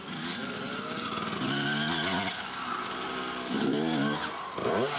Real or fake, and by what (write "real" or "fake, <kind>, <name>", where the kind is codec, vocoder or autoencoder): real